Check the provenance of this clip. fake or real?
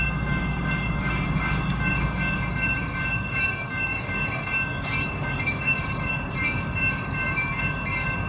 fake